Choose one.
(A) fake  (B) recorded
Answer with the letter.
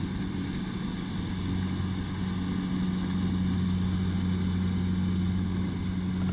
B